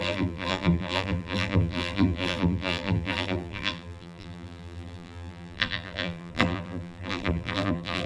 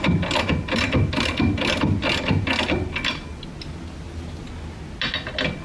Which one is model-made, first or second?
first